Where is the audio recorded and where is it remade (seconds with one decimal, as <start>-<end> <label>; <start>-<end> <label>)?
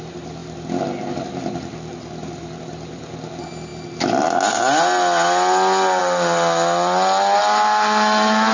0.0-8.5 recorded